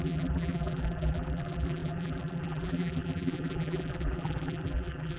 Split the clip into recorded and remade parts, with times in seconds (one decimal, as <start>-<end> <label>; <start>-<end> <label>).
0.0-5.2 remade

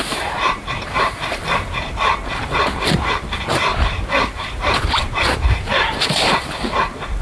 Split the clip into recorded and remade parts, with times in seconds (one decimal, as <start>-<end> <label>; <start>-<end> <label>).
0.0-0.8 recorded; 0.8-1.4 remade; 1.4-3.7 recorded; 3.7-6.4 remade; 6.4-7.2 recorded

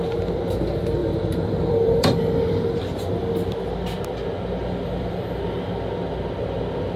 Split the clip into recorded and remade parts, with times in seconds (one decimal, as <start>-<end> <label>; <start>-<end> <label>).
0.0-1.0 recorded; 1.0-3.1 remade; 3.1-4.6 recorded; 4.6-5.4 remade; 5.4-7.0 recorded

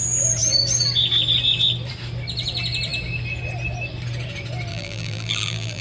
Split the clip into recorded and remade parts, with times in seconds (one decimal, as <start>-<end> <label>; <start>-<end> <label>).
0.0-4.7 recorded; 4.7-5.8 remade

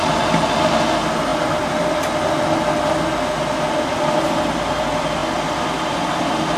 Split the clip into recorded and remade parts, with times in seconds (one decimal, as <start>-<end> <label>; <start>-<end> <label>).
0.0-6.6 recorded

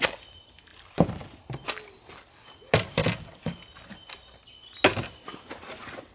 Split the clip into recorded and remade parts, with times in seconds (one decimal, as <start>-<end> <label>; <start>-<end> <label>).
0.0-0.7 recorded; 0.7-1.4 remade; 1.4-6.1 recorded

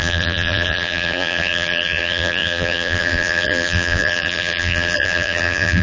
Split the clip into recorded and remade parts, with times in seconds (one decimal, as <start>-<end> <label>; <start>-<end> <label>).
0.0-5.8 remade